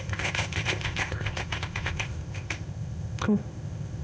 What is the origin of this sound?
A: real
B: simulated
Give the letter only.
B